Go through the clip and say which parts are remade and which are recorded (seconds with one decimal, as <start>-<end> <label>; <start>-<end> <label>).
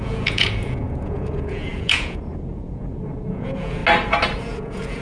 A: 0.0-3.8 remade; 3.8-4.4 recorded; 4.4-5.0 remade